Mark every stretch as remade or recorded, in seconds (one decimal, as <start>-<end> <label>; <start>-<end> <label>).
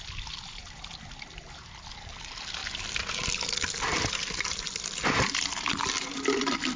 0.0-6.8 recorded